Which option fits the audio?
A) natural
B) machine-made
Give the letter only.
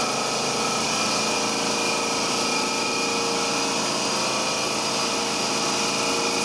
A